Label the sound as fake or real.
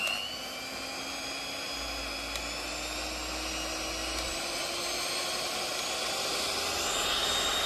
real